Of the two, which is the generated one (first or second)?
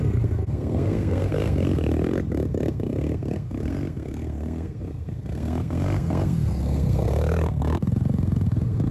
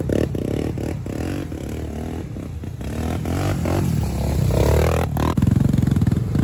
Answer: first